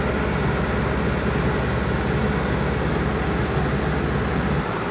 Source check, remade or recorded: recorded